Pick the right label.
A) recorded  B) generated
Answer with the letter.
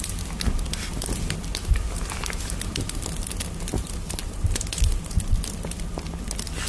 A